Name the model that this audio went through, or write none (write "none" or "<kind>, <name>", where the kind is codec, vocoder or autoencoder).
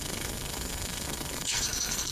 codec, SNAC